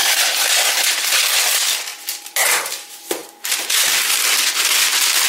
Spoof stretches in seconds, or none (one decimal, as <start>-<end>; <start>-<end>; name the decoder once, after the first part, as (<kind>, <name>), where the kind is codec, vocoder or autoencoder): none